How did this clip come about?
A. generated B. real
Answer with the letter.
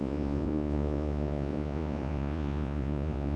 A